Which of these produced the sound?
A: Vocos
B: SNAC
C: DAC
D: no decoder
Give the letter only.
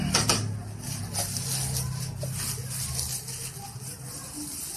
D